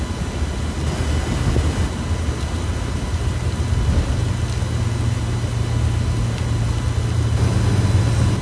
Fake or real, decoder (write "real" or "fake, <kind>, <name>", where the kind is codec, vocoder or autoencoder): real